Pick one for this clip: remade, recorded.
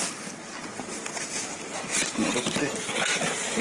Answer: recorded